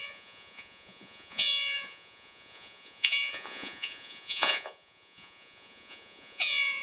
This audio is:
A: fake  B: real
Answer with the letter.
A